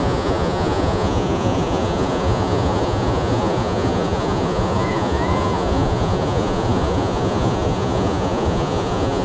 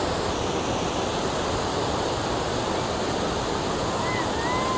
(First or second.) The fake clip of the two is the first